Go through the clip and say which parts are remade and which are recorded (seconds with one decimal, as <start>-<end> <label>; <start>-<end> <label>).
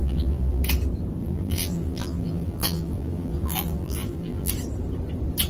0.0-0.6 remade; 0.6-1.2 recorded; 1.2-4.5 remade; 4.5-5.5 recorded